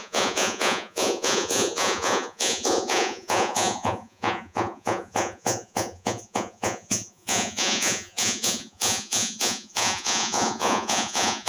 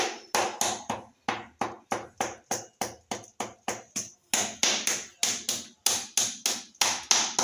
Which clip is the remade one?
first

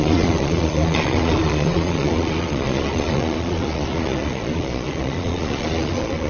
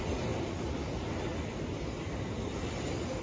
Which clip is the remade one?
first